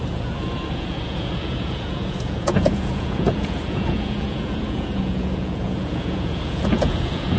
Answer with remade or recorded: remade